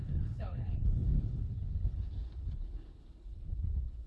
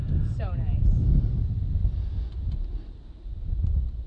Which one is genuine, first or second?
second